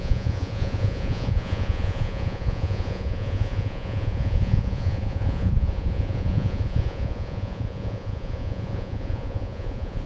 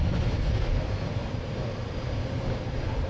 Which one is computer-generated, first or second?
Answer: first